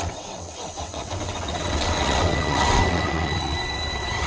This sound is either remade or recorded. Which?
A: remade